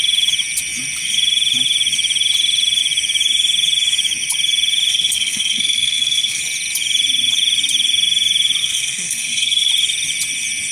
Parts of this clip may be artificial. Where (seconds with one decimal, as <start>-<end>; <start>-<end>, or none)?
4.9-6.4; 8.6-9.7